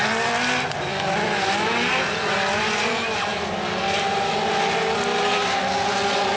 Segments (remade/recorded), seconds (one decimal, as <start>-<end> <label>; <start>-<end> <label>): 0.0-6.4 recorded